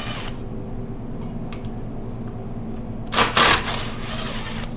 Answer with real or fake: real